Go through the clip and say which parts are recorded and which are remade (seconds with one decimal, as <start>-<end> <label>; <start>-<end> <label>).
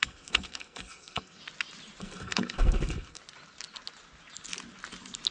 0.0-1.4 remade; 1.4-2.0 recorded; 2.0-3.2 remade; 3.2-5.3 recorded